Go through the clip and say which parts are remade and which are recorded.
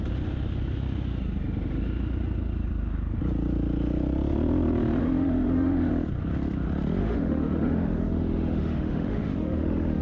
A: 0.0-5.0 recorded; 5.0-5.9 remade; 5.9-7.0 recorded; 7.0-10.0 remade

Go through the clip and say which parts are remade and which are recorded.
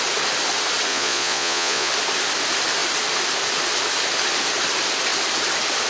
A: 0.0-0.9 recorded; 0.9-1.9 remade; 1.9-5.9 recorded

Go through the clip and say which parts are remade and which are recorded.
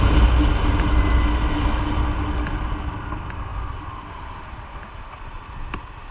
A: 0.0-6.1 recorded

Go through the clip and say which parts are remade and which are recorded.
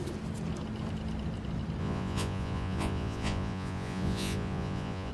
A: 0.0-1.8 recorded; 1.8-5.1 remade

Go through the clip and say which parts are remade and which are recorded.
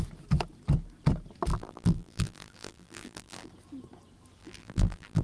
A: 0.0-1.5 recorded; 1.5-3.5 remade; 3.5-4.4 recorded; 4.4-5.2 remade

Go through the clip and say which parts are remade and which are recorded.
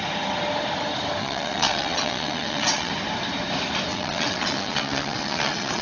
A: 0.0-1.2 recorded; 1.2-2.9 remade; 2.9-3.9 recorded; 3.9-5.8 remade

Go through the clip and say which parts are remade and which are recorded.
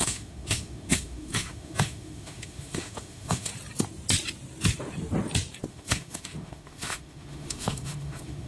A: 0.0-3.5 remade; 3.5-5.7 recorded; 5.7-8.5 remade